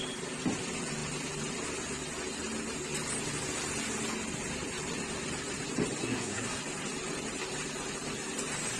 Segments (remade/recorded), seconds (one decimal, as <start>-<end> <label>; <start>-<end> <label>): 0.0-6.0 recorded; 6.0-6.6 remade; 6.6-8.8 recorded